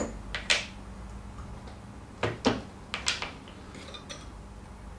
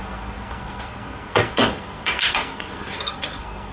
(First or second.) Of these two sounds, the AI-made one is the second